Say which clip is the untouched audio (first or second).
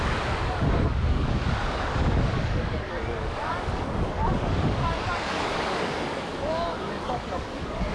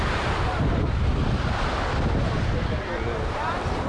second